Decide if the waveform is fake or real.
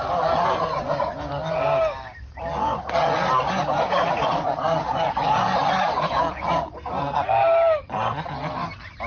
real